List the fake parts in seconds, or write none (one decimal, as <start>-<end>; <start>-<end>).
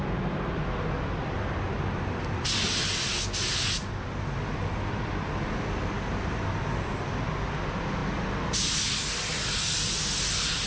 none